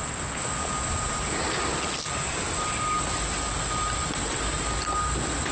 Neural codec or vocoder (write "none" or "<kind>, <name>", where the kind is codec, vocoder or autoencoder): none